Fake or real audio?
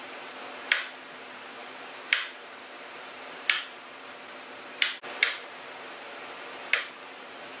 fake